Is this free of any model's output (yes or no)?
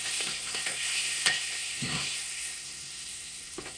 no